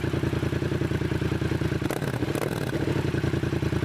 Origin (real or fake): real